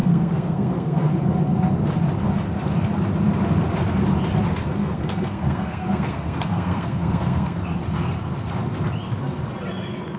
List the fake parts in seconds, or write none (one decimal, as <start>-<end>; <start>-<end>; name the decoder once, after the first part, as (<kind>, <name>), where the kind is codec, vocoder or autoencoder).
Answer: 0.0-1.1 (codec, SNAC); 4.8-7.6